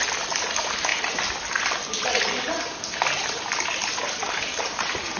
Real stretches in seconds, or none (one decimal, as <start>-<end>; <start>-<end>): 0.0-5.2